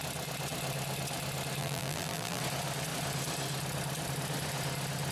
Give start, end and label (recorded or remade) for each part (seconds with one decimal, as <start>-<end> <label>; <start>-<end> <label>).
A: 0.0-1.6 recorded; 1.6-2.4 remade; 2.4-5.1 recorded